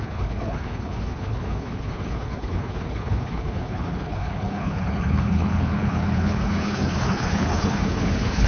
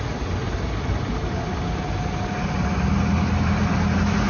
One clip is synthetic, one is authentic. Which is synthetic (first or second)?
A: first